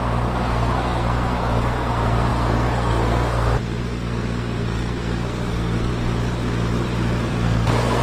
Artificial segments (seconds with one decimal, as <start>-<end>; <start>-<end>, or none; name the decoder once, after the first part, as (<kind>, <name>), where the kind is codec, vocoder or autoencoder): 0.0-5.9 (codec, SNAC); 7.2-8.0

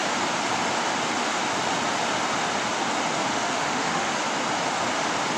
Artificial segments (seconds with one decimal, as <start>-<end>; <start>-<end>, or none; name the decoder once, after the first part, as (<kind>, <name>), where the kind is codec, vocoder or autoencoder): 3.3-4.1 (autoencoder, DAC-VAE)

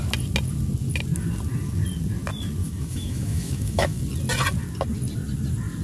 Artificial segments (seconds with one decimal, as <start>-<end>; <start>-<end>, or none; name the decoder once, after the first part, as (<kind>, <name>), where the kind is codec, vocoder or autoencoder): 2.6-4.0 (autoencoder, DAC-VAE)

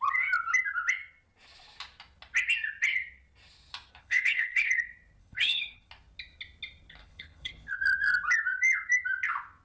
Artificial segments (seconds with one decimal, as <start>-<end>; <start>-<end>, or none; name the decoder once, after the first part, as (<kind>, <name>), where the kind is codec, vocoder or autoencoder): 4.0-4.7 (codec, HILCodec); 5.2-5.9; 7.0-7.8

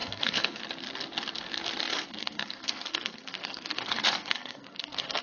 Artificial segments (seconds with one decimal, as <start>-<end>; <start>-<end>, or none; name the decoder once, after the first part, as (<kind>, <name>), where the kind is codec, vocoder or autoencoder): 0.0-0.6 (codec, SNAC); 1.9-5.2